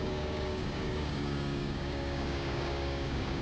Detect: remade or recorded remade